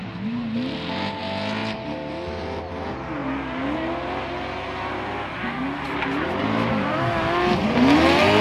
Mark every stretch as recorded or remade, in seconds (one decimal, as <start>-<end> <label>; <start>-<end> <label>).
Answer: 0.0-8.4 recorded